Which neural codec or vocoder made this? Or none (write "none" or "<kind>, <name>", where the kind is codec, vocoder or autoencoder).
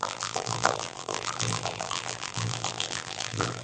vocoder, BigVGAN v2